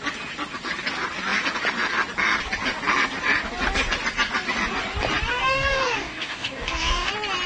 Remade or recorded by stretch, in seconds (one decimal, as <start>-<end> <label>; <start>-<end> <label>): 0.0-5.3 recorded; 5.3-7.1 remade; 7.1-7.5 recorded